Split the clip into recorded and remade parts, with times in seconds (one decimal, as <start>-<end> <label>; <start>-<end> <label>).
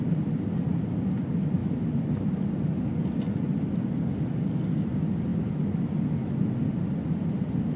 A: 0.0-7.8 recorded